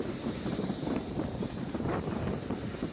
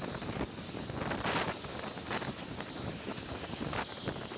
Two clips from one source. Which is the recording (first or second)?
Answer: second